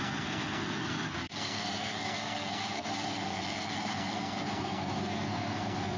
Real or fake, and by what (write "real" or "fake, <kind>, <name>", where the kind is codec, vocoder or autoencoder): fake, codec, SNAC